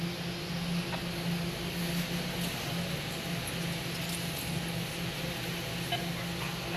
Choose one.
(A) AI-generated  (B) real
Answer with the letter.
B